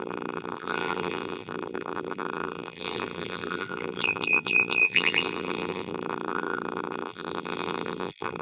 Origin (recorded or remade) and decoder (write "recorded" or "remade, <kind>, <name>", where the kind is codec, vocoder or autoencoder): remade, vocoder, BigVGAN v2